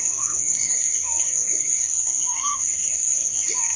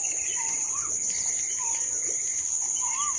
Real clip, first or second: second